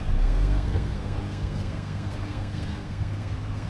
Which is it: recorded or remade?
remade